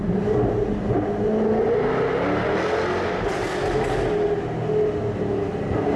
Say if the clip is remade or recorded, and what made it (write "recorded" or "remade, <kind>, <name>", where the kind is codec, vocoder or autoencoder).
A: recorded